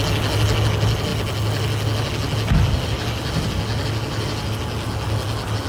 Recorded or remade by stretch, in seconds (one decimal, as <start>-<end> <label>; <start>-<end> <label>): 0.0-5.7 recorded

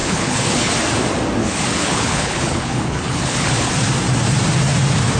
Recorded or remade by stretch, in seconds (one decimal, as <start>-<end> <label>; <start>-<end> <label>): 0.0-0.7 remade; 0.7-1.4 recorded; 1.4-3.7 remade; 3.7-5.2 recorded